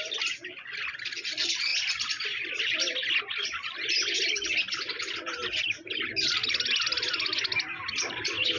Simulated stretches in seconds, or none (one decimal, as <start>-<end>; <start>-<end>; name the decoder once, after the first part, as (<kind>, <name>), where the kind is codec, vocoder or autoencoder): none